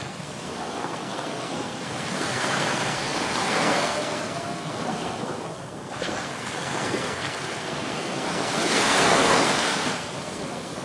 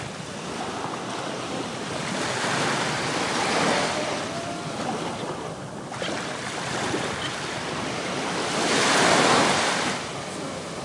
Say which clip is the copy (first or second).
first